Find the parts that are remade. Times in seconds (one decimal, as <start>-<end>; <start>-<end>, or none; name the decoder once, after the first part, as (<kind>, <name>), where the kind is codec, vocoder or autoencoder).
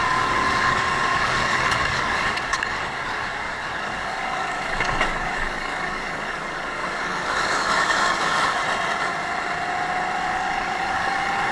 0.0-8.6 (codec, DAC); 10.2-11.5